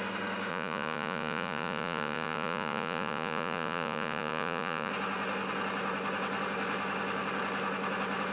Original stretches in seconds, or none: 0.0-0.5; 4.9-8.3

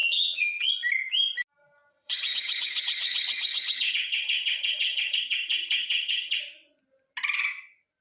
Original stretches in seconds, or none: 0.7-1.9; 6.4-8.0

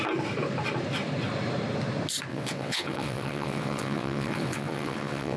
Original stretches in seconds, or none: 0.0-2.3

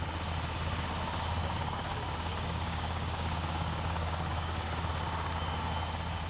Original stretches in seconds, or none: 0.0-1.4; 4.9-6.3

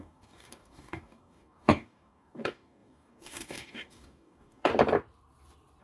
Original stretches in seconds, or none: 4.7-5.8

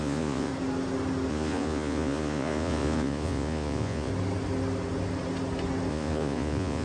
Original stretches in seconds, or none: 0.5-1.3; 4.1-5.9